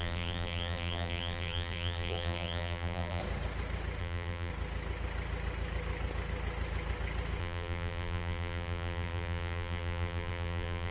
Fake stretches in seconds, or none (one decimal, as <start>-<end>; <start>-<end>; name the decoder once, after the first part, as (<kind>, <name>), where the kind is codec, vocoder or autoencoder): 0.0-3.2 (vocoder, BigVGAN v2); 4.0-4.5; 7.4-10.9